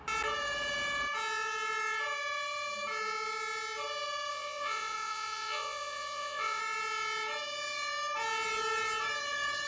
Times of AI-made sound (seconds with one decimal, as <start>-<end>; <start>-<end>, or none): 4.3-6.6